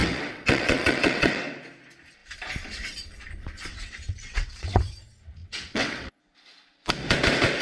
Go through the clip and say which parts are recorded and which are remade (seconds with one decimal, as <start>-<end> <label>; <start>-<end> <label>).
0.0-1.6 remade; 1.6-3.7 recorded; 3.7-4.8 remade; 4.8-5.4 recorded; 5.4-6.2 remade; 6.2-7.6 recorded